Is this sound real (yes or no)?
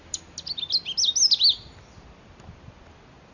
yes